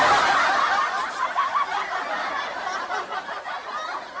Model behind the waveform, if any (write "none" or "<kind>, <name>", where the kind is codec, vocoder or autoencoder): none